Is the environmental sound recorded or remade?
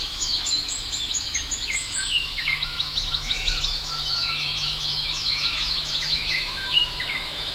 remade